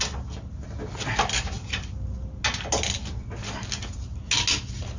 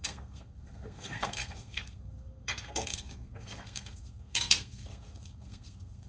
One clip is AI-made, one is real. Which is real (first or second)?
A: first